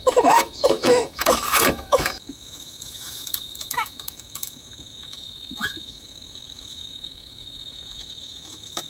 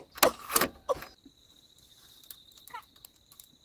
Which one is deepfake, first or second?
first